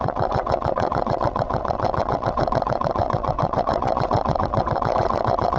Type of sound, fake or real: fake